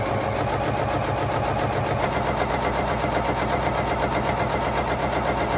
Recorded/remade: recorded